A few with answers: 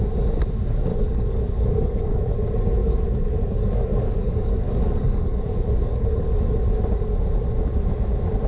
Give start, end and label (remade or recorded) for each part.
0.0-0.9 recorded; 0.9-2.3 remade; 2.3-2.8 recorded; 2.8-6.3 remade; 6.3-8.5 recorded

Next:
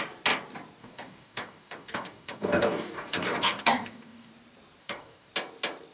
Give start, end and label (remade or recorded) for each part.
0.0-0.8 recorded; 0.8-4.3 remade; 4.3-4.8 recorded; 4.8-5.3 remade; 5.3-5.9 recorded